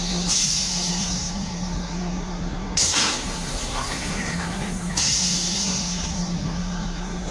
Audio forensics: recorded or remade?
remade